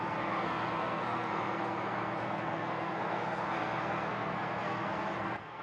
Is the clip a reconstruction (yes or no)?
yes